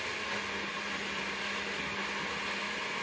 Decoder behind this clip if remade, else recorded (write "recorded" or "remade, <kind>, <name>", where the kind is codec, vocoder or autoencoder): recorded